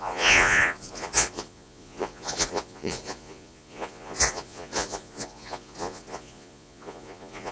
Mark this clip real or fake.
fake